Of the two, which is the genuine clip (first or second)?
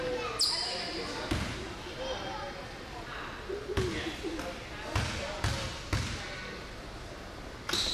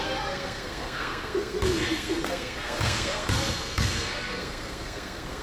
first